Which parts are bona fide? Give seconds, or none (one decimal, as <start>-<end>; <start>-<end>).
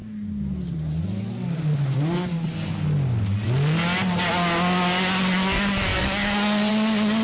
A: 0.0-7.2